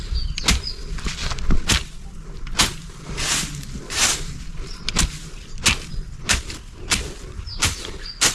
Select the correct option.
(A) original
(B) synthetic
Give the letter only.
A